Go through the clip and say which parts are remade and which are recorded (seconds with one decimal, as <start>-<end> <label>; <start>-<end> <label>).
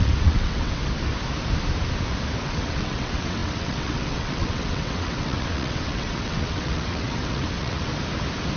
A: 0.0-0.8 remade; 0.8-2.4 recorded; 2.4-7.9 remade; 7.9-8.6 recorded